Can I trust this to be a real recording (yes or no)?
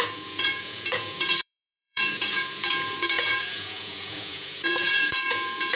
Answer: no